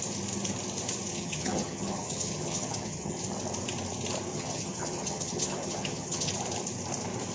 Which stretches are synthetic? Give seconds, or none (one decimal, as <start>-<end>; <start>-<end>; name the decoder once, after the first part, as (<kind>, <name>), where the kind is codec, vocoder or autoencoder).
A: 1.1-3.2 (vocoder, HiFi-GAN); 4.3-6.3